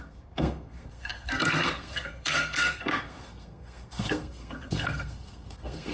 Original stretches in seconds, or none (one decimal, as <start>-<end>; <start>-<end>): none